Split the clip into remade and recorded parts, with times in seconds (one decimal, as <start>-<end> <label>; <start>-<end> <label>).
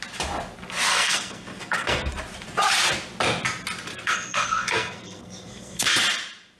0.0-0.9 recorded; 0.9-2.1 remade; 2.1-3.9 recorded; 3.9-6.0 remade; 6.0-6.6 recorded